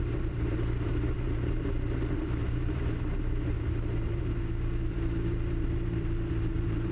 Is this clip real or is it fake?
fake